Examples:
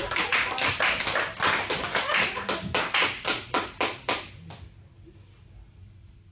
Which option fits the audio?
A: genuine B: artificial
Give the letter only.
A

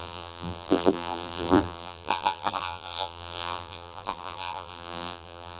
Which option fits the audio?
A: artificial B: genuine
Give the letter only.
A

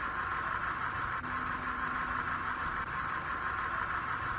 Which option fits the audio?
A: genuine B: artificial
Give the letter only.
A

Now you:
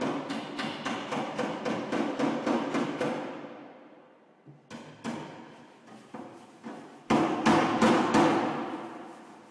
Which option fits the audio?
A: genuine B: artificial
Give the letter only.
A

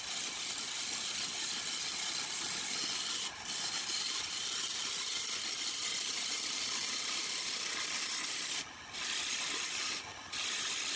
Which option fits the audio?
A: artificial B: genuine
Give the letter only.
B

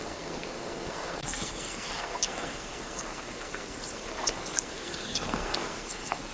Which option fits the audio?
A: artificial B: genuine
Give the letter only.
A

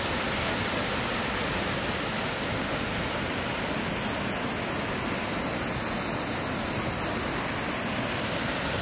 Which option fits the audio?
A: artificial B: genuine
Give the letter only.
B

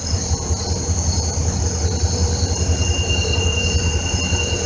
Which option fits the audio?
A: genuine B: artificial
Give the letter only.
A